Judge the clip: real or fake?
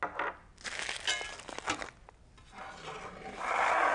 real